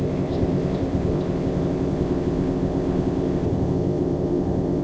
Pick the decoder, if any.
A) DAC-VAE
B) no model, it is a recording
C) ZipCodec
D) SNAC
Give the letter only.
C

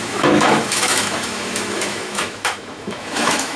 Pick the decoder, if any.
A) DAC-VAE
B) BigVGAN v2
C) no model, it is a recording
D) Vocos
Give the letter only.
A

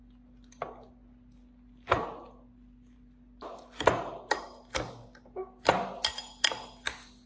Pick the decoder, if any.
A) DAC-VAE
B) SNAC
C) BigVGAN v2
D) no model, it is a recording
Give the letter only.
D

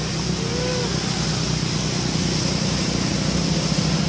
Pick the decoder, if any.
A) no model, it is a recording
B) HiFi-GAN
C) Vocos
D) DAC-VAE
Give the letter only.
A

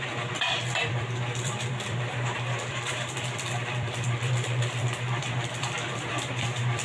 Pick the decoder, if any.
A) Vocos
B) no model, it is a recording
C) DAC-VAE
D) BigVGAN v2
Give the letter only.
D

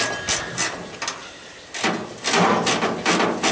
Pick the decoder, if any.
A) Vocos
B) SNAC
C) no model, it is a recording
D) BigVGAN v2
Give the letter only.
C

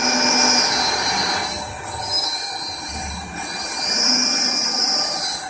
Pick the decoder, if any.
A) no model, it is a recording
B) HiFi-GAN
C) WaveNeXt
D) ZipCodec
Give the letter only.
A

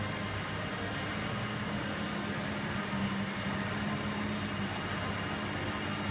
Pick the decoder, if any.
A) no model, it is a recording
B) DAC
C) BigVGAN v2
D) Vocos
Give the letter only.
A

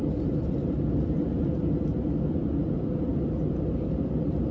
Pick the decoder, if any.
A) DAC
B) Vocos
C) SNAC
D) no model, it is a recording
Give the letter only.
D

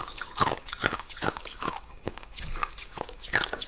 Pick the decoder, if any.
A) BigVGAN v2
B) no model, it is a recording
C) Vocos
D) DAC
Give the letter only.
D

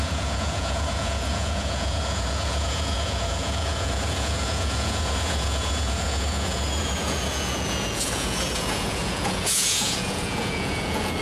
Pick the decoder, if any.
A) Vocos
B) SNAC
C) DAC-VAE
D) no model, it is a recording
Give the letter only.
A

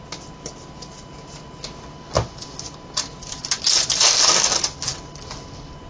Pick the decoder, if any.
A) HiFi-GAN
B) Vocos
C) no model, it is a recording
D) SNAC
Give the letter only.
C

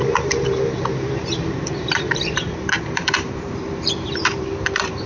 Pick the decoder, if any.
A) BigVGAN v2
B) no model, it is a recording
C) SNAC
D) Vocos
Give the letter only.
A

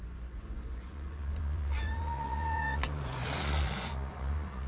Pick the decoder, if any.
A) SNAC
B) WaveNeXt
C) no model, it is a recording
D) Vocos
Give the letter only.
D